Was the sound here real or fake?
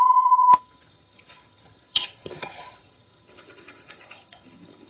fake